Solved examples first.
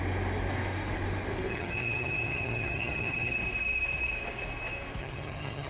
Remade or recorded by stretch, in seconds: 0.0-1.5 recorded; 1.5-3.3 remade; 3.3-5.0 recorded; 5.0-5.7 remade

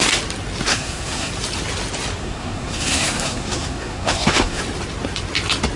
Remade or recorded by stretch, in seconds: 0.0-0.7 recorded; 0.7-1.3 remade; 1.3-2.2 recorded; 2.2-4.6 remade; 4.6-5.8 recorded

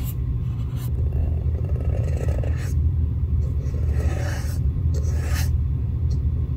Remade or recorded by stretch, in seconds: 0.0-1.2 recorded; 1.2-4.9 remade; 4.9-6.6 recorded

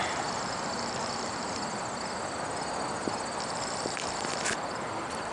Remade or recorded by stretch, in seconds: 0.0-3.0 recorded; 3.0-5.3 remade